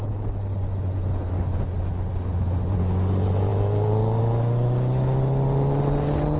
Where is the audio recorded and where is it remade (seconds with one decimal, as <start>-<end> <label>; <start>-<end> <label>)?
0.0-6.4 recorded